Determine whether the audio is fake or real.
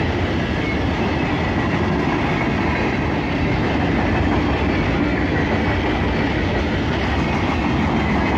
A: real